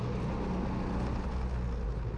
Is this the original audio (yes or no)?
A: yes